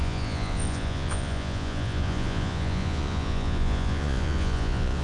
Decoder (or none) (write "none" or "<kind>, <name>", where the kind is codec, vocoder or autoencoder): vocoder, Vocos